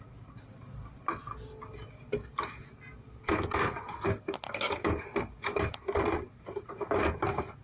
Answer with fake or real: real